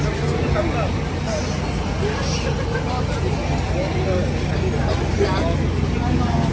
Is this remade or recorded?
recorded